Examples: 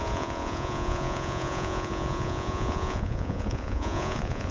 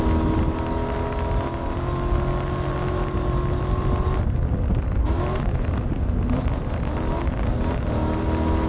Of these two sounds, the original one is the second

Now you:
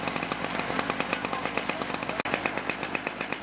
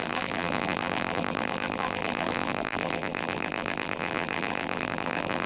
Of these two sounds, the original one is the first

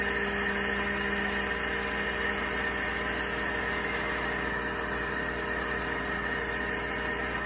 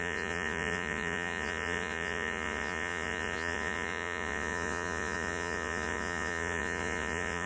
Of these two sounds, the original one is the first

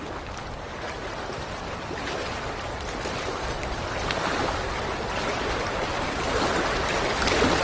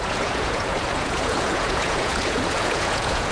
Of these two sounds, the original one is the first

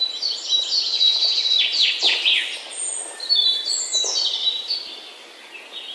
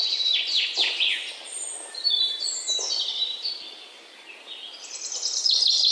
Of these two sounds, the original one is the first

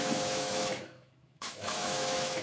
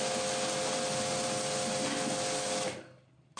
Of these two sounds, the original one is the second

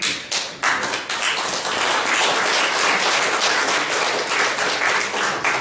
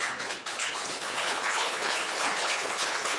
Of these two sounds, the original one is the first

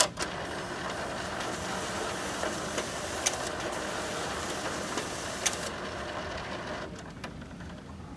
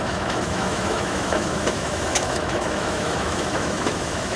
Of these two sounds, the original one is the first